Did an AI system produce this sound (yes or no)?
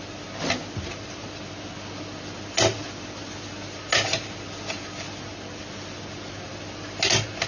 no